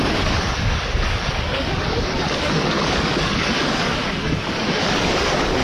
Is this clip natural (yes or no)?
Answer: no